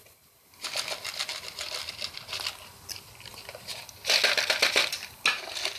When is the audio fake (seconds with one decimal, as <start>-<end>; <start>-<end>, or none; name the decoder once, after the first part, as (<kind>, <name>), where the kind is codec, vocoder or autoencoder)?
none

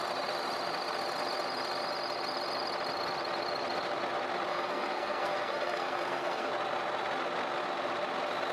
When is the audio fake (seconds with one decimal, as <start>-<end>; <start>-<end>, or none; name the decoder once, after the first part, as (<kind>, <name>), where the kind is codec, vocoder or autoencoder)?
4.5-6.5 (codec, SNAC)

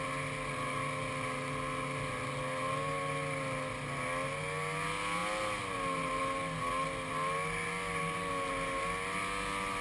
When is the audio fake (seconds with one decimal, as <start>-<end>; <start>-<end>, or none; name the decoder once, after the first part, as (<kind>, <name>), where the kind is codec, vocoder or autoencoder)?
none

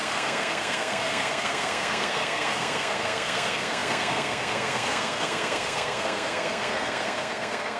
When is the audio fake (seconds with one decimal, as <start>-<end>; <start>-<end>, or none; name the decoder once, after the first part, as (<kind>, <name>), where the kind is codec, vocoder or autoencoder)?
0.0-7.8 (codec, SNAC)